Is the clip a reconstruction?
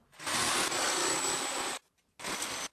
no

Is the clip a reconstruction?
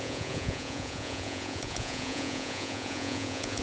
yes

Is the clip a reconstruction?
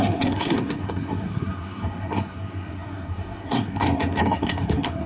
yes